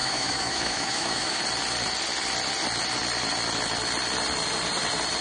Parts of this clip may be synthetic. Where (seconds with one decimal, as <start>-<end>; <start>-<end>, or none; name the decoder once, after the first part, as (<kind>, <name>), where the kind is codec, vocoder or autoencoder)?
0.0-1.4 (autoencoder, DAC-VAE)